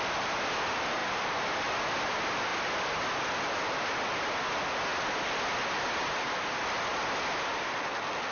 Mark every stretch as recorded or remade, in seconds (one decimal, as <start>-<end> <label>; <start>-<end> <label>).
0.0-1.0 recorded; 1.0-1.8 remade; 1.8-6.9 recorded; 6.9-7.8 remade; 7.8-8.3 recorded